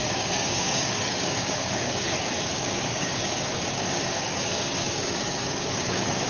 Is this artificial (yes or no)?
yes